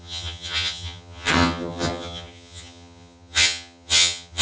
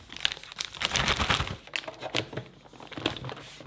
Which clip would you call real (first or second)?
second